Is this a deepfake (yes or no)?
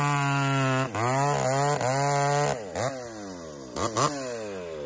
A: no